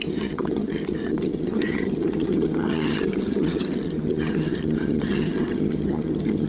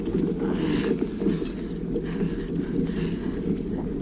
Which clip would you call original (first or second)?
second